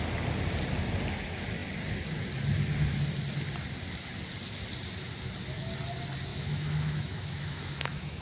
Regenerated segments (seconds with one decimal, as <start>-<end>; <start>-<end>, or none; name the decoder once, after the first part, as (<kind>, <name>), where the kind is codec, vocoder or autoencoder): 6.3-8.2 (autoencoder, DAC-VAE)